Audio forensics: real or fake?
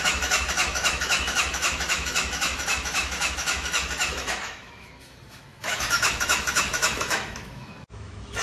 fake